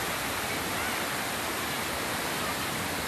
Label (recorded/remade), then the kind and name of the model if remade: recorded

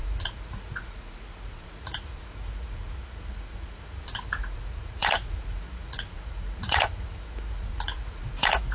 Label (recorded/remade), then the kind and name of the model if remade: remade, vocoder, Vocos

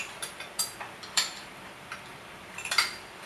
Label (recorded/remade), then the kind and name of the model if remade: remade, vocoder, BigVGAN v2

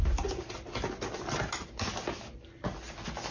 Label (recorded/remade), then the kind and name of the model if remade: recorded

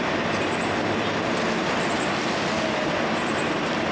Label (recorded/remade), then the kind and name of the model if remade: recorded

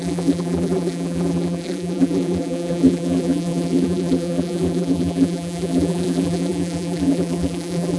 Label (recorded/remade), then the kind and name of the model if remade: remade, vocoder, BigVGAN v2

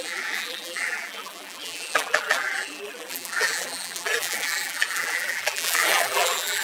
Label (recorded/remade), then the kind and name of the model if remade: remade, vocoder, BigVGAN v2